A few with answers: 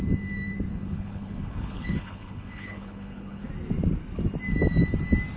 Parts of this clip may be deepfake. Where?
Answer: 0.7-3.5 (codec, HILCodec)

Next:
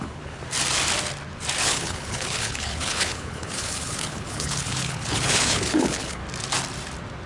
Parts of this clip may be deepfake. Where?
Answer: 0.0-0.4 (codec, HILCodec); 1.6-6.2